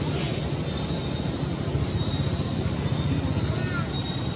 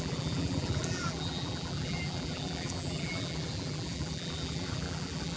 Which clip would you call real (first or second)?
first